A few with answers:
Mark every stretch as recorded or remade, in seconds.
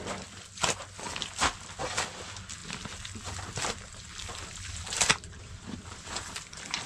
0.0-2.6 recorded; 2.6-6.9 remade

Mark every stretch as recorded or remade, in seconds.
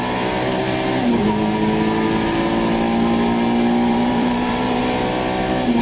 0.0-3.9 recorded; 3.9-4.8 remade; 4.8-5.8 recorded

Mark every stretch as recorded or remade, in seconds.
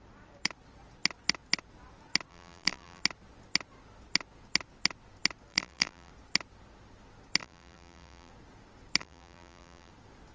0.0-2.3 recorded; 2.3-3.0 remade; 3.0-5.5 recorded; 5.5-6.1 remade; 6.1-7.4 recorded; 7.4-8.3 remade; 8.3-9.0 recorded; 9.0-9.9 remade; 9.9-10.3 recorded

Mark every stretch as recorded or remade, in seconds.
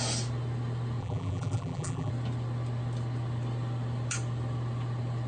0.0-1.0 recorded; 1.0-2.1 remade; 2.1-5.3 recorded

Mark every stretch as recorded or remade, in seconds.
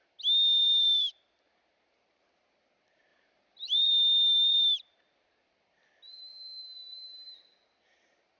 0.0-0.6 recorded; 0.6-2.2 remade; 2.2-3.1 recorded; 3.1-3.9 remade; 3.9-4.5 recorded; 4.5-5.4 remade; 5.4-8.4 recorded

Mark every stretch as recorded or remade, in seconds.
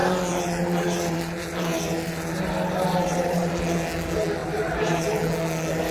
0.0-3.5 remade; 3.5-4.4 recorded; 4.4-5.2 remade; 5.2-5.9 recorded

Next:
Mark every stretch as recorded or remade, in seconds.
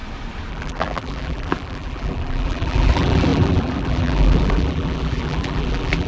0.0-0.5 recorded; 0.5-6.1 remade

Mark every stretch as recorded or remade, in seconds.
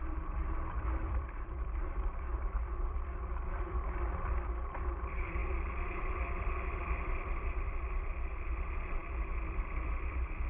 0.0-10.5 remade